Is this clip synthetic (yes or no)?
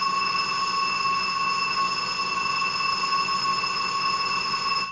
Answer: no